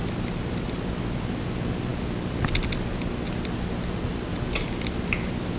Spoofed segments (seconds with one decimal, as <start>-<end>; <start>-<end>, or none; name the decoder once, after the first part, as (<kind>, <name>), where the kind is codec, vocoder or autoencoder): none